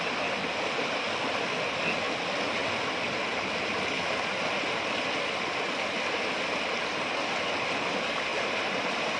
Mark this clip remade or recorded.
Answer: recorded